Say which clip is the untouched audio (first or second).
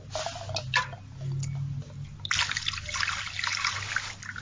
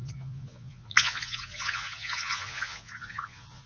first